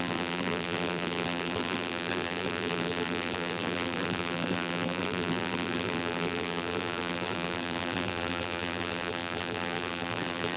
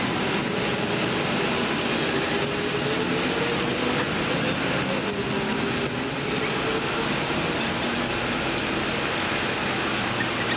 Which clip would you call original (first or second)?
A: second